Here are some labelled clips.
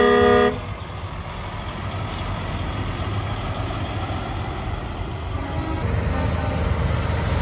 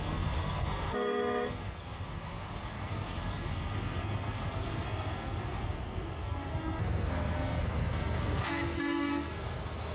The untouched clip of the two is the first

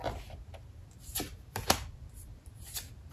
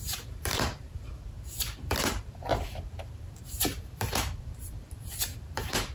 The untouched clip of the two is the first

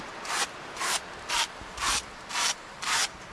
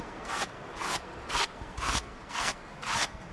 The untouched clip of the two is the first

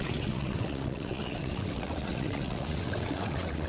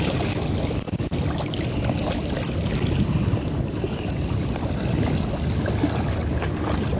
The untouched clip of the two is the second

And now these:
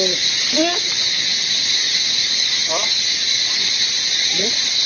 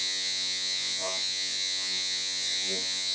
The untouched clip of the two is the first